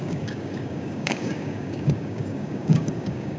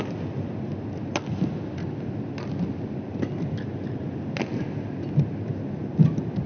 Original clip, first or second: second